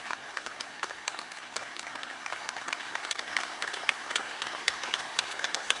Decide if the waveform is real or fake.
fake